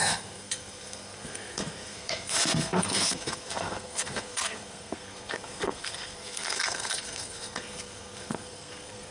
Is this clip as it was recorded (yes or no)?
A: no